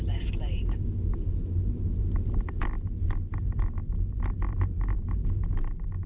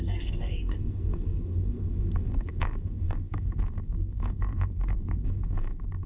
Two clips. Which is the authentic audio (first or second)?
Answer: first